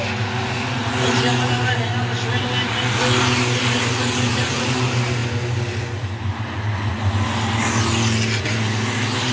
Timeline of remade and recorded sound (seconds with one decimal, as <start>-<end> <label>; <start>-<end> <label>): 0.0-9.3 recorded